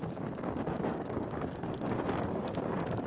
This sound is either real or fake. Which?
fake